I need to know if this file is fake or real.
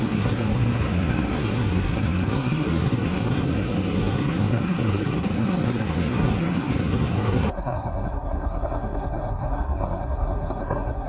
fake